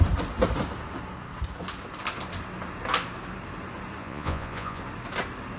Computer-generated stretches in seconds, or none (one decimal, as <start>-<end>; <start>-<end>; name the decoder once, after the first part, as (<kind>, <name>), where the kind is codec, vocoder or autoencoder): 4.0-4.8 (vocoder, Vocos)